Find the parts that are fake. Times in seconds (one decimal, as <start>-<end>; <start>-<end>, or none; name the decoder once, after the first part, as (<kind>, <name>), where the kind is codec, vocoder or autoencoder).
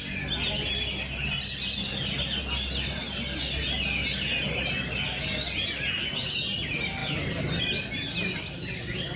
none